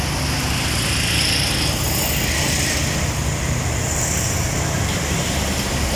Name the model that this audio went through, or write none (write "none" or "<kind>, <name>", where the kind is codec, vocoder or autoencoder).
none